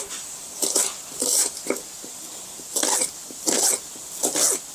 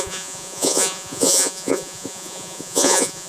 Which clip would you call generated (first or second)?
second